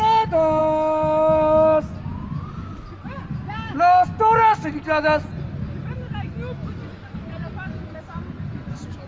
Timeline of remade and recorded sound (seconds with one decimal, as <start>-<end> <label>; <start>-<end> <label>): 0.0-9.1 recorded